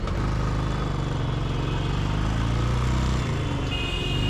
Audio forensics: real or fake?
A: real